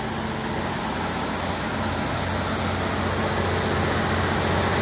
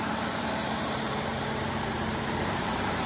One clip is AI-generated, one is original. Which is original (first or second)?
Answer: first